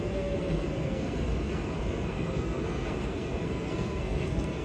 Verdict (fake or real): fake